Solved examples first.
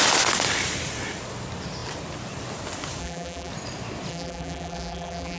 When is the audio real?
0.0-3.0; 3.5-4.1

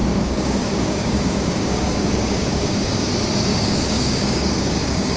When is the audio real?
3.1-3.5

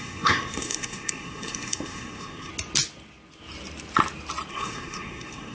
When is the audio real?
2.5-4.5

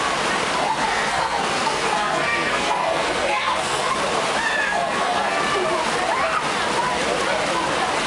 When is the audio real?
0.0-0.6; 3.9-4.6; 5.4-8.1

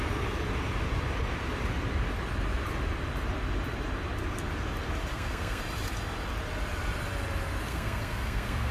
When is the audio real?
0.0-5.1; 5.6-7.7

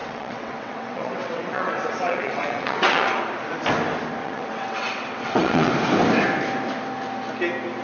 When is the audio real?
3.2-4.2; 5.7-7.8

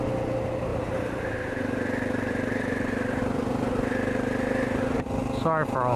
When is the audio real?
0.0-0.7; 3.2-6.0